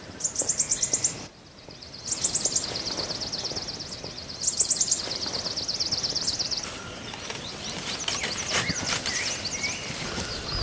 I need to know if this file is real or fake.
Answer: real